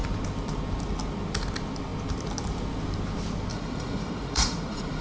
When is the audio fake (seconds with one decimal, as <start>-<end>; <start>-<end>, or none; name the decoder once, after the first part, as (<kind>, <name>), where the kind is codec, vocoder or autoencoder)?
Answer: 3.5-5.0 (vocoder, Vocos)